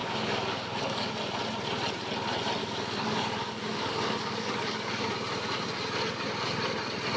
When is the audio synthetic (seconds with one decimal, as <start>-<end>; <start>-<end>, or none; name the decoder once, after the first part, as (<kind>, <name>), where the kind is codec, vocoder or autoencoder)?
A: 0.0-1.1 (codec, DAC); 2.6-5.1